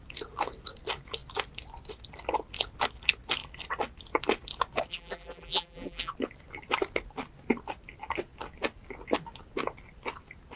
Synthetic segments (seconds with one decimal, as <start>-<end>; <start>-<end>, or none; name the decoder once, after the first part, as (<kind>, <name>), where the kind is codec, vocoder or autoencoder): 4.9-6.1 (vocoder, BigVGAN v2)